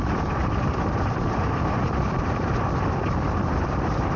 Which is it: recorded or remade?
remade